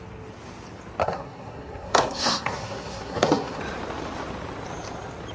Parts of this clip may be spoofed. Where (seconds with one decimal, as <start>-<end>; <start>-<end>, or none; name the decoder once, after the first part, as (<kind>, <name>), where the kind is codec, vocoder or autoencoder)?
1.0-3.6 (codec, SNAC)